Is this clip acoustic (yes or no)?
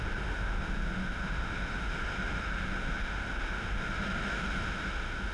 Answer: no